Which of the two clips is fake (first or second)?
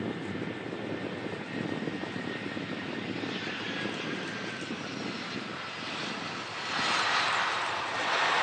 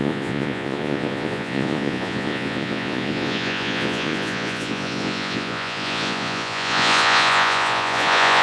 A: second